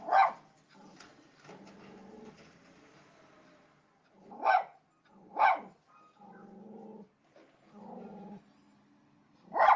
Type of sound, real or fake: real